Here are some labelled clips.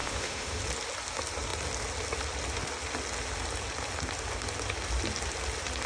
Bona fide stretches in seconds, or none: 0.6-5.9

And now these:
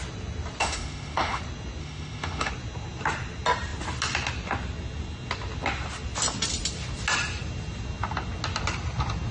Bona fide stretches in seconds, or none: 0.0-0.6; 1.4-1.8; 2.5-9.3